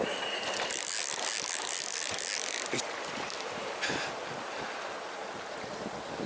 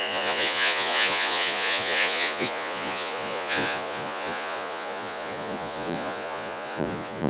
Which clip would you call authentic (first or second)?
first